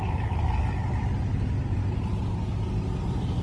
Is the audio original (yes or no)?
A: yes